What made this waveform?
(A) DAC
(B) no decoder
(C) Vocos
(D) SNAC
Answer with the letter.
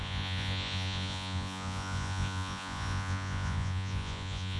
C